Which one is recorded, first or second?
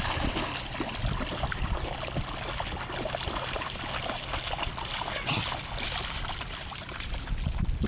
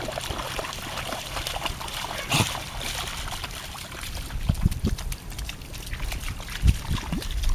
first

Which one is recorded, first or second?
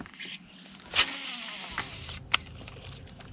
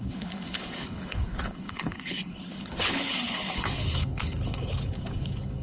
first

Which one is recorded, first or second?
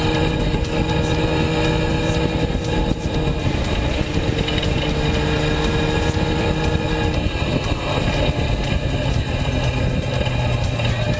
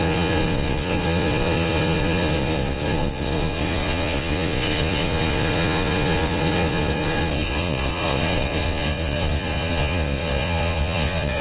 first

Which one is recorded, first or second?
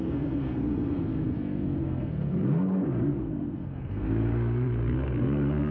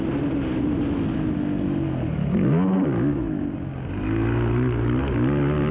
second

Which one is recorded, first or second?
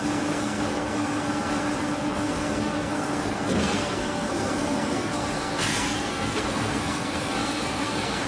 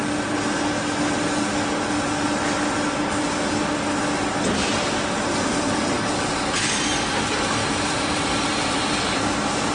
second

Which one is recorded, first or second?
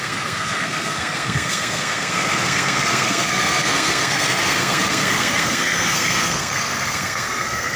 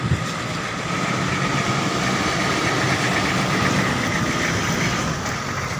second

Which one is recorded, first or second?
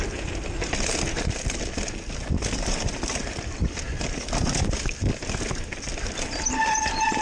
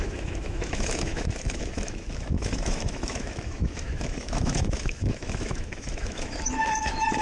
first